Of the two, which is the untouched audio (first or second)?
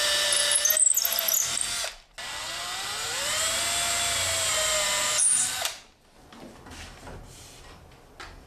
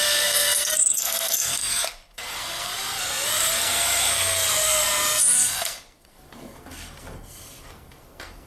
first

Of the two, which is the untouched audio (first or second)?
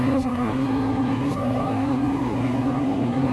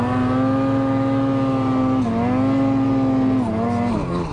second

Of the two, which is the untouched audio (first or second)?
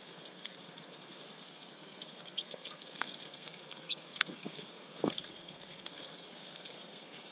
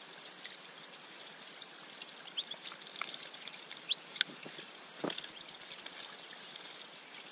second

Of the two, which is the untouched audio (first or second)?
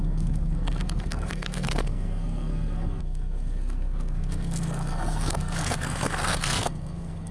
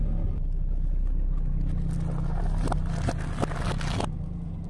second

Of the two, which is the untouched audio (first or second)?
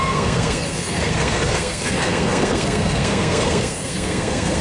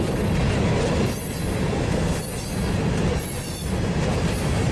second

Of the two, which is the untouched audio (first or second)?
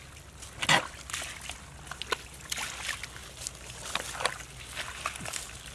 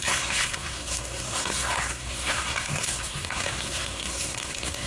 first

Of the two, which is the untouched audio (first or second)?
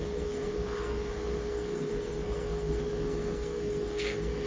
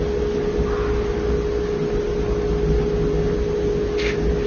second